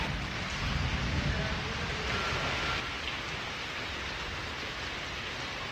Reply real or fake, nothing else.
real